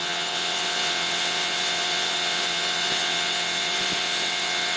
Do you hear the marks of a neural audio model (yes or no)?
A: yes